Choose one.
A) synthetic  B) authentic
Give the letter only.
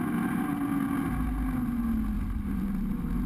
B